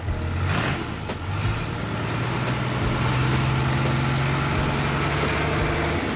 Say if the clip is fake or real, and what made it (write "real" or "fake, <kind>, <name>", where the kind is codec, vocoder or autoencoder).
real